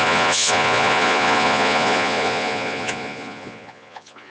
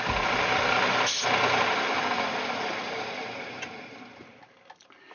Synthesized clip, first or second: first